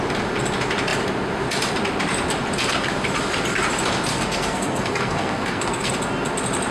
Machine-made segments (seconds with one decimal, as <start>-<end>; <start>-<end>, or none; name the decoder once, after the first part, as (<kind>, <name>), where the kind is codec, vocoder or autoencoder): 4.1-5.9 (codec, SNAC)